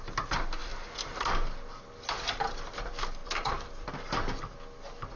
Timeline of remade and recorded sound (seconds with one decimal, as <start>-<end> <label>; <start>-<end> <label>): 0.0-0.6 recorded; 0.6-1.2 remade; 1.2-3.2 recorded; 3.2-3.9 remade; 3.9-5.2 recorded

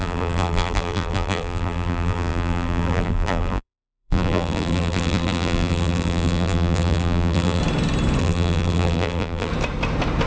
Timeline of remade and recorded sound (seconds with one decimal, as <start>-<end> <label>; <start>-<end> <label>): 0.0-7.6 remade; 7.6-8.2 recorded; 8.2-9.5 remade; 9.5-10.3 recorded

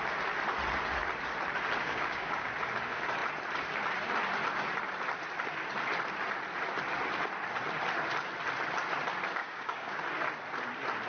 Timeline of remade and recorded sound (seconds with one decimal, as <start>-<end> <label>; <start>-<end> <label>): 0.0-1.8 recorded; 1.8-2.5 remade; 2.5-9.4 recorded; 9.4-10.0 remade; 10.0-11.1 recorded